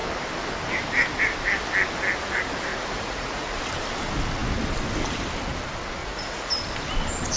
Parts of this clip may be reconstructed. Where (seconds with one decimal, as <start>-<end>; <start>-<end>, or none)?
2.7-3.6; 6.0-6.5